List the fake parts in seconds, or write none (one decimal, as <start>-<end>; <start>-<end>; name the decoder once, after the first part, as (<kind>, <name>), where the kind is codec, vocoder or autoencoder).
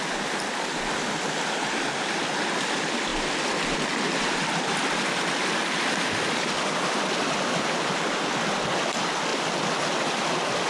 none